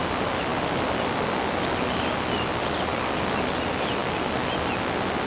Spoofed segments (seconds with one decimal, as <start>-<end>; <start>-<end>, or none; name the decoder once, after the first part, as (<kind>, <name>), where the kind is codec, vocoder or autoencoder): none